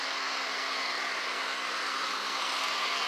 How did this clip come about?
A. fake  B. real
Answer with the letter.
A